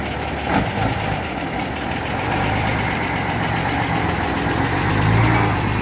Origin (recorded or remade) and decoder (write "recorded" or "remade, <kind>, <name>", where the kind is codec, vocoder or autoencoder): recorded